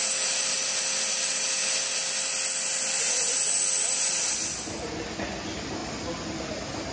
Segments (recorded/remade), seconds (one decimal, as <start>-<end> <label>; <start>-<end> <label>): 0.0-6.9 recorded